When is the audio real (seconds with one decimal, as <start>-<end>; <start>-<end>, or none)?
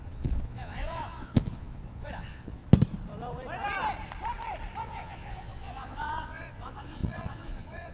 2.6-4.8